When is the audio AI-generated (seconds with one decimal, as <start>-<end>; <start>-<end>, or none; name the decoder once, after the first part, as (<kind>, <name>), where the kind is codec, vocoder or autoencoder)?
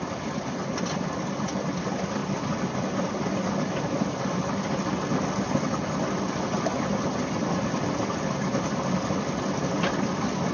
none